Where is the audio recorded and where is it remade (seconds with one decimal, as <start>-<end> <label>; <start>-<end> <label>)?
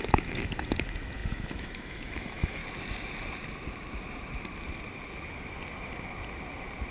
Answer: 0.0-2.6 remade; 2.6-6.9 recorded